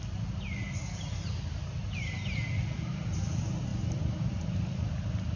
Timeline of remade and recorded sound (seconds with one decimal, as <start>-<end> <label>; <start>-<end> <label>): 0.0-5.4 recorded